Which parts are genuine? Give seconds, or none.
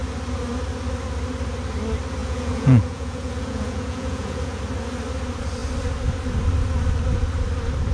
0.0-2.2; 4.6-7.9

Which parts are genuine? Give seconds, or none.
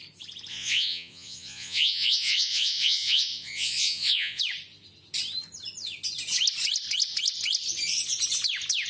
0.0-0.5; 4.4-8.9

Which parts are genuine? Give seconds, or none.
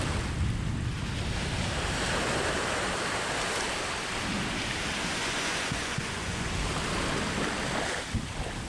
0.0-5.2; 6.5-8.7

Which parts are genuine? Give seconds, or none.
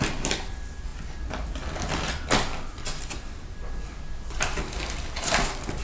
0.0-5.8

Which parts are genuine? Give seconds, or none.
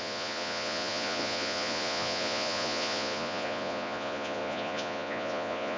none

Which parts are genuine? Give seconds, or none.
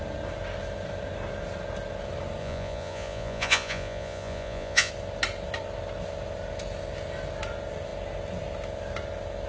0.0-2.4; 4.9-9.5